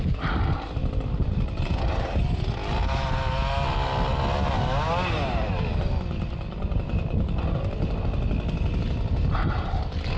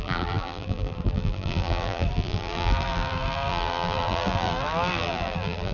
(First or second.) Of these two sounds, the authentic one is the first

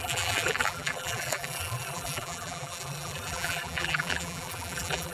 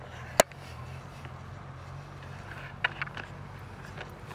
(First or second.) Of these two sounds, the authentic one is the second